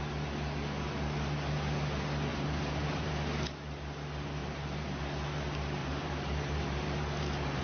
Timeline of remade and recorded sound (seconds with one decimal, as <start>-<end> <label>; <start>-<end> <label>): 0.0-2.3 recorded; 2.3-3.1 remade; 3.1-4.4 recorded; 4.4-5.0 remade; 5.0-5.8 recorded; 5.8-7.6 remade